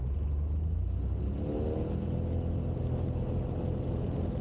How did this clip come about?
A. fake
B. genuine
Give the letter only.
B